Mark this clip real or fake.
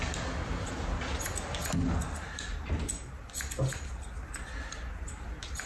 real